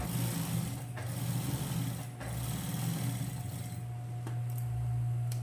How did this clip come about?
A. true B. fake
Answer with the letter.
A